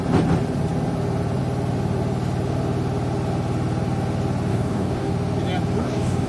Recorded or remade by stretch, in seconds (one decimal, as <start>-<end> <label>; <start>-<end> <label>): 0.0-4.5 recorded; 4.5-5.1 remade; 5.1-5.8 recorded; 5.8-6.3 remade